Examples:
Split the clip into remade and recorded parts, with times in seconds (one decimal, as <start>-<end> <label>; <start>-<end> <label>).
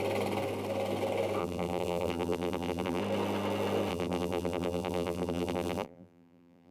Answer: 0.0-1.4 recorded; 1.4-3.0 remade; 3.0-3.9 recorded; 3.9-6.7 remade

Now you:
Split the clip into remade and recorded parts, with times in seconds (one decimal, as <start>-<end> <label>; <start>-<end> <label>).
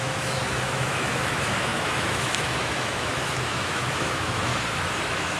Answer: 0.0-4.5 remade; 4.5-5.0 recorded; 5.0-5.4 remade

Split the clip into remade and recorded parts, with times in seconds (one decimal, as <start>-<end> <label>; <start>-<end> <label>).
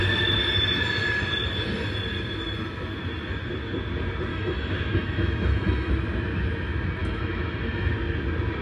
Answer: 0.0-4.3 recorded; 4.3-5.9 remade; 5.9-7.0 recorded; 7.0-7.9 remade; 7.9-8.6 recorded